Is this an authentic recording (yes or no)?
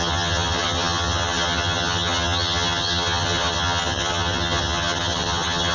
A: no